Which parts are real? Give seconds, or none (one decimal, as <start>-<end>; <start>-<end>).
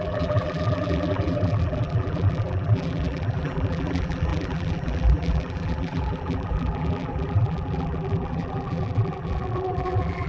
none